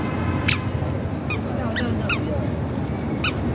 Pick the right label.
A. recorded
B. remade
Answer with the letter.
A